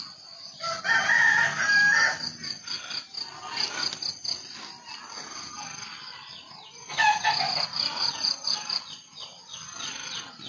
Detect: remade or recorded recorded